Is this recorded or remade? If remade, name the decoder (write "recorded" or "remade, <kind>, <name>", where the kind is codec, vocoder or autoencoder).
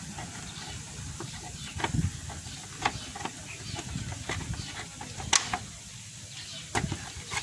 recorded